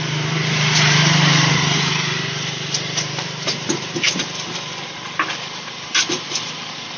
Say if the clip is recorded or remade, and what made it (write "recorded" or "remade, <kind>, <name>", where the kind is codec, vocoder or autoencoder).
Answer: remade, vocoder, BigVGAN v2